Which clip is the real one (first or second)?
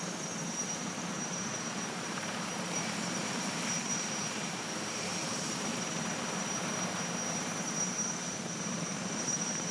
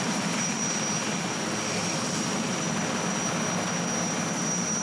second